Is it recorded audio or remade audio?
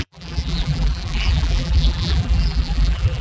remade